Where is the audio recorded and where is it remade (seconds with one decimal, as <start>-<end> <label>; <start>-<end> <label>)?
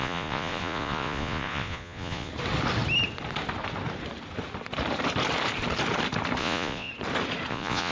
0.0-2.3 remade; 2.3-6.4 recorded; 6.4-6.9 remade; 6.9-7.5 recorded; 7.5-7.9 remade